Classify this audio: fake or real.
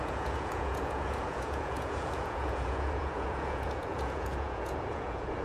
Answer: fake